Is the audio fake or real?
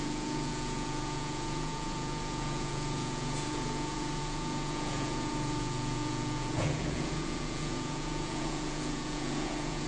fake